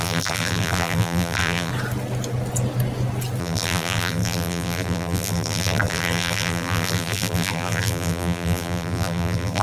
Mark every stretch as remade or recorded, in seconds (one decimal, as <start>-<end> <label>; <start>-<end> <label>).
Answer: 0.0-1.7 remade; 1.7-3.4 recorded; 3.4-9.6 remade